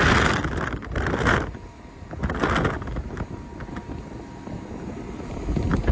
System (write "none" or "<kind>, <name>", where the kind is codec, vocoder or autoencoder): none